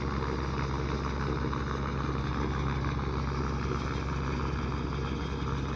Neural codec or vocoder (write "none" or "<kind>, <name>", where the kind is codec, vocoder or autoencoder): none